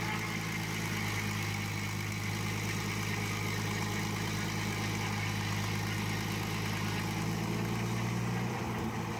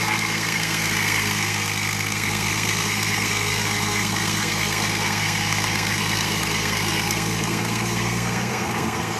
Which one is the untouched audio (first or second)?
first